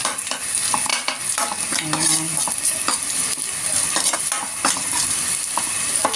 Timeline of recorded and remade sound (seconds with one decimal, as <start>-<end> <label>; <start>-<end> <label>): 0.0-6.2 recorded